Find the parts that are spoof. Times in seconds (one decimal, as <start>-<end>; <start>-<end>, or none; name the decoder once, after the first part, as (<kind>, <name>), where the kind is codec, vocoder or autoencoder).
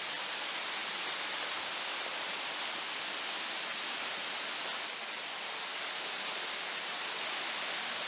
0.8-2.5 (vocoder, BigVGAN v2); 4.2-5.0